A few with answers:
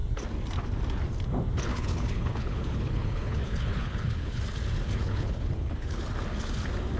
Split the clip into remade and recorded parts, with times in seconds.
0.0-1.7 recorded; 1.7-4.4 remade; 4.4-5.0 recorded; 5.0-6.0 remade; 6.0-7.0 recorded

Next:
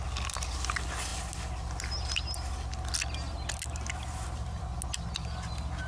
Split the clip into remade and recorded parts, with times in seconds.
0.0-5.9 recorded

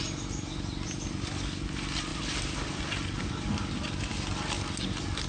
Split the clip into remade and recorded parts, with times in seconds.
0.0-2.1 recorded; 2.1-2.8 remade; 2.8-5.3 recorded

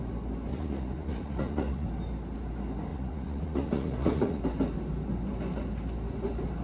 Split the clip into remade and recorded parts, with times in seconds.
0.0-0.5 recorded; 0.5-1.9 remade; 1.9-2.9 recorded; 2.9-4.4 remade; 4.4-6.6 recorded

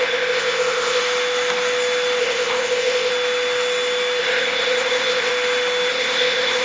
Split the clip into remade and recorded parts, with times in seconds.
0.0-1.0 remade; 1.0-2.2 recorded; 2.2-3.1 remade; 3.1-4.2 recorded; 4.2-5.3 remade; 5.3-5.9 recorded; 5.9-6.6 remade

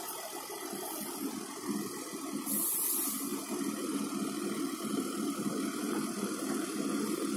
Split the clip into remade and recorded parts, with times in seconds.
0.0-7.4 recorded

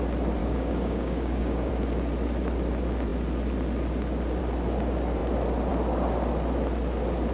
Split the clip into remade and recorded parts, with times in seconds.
0.0-0.4 recorded; 0.4-1.7 remade; 1.7-7.3 recorded